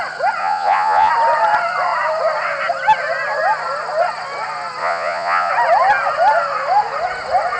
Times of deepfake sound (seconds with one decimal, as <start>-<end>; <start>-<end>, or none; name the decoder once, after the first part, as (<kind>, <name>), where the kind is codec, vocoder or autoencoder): 0.4-1.1 (vocoder, Vocos); 4.8-5.5